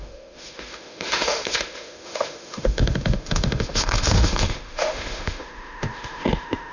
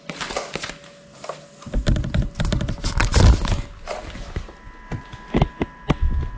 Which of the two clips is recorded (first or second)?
second